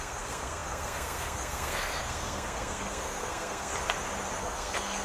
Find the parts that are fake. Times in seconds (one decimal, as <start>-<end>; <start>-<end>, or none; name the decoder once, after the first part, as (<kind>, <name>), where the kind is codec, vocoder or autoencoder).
0.0-3.7 (codec, SNAC); 4.4-5.0

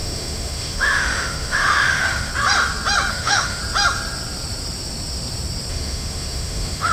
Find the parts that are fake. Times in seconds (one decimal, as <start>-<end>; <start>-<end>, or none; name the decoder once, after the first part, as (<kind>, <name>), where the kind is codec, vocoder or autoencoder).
0.0-2.3 (autoencoder, DAC-VAE); 3.1-3.6; 5.7-6.9